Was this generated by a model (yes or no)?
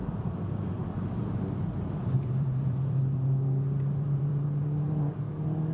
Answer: yes